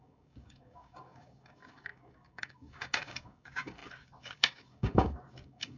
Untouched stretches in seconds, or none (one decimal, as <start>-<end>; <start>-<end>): none